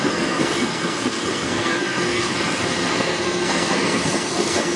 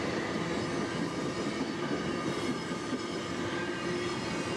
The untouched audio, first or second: second